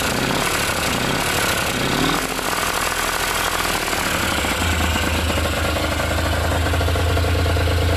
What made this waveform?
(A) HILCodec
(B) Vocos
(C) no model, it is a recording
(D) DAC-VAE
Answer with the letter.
C